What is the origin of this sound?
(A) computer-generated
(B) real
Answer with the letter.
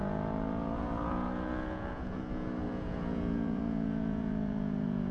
A